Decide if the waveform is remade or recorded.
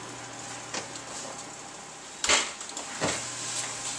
recorded